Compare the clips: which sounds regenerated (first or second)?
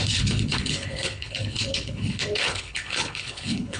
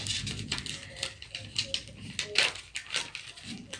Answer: first